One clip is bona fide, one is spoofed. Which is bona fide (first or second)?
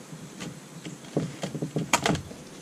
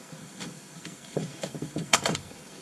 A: first